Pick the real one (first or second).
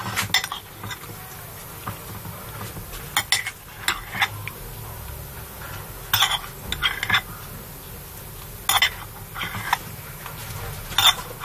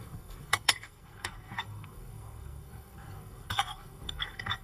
first